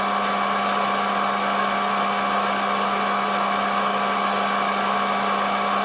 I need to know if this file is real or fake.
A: real